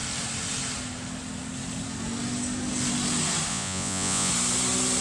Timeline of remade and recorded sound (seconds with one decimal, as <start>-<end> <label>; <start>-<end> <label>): 0.0-3.5 recorded; 3.5-4.3 remade; 4.3-5.0 recorded